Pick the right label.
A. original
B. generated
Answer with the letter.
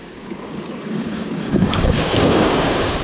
B